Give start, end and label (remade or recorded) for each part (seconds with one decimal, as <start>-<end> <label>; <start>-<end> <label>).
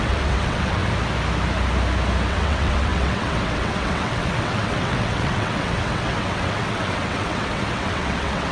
0.0-0.8 remade; 0.8-2.3 recorded; 2.3-8.5 remade